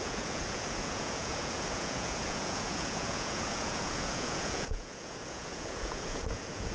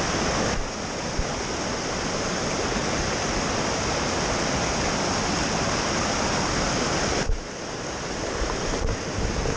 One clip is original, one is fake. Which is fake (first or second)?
first